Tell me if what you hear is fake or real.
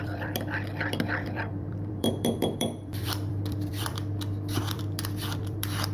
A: fake